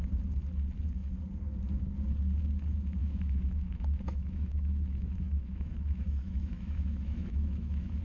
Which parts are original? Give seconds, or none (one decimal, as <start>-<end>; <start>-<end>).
0.0-3.0